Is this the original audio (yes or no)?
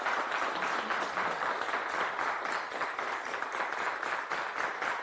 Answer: yes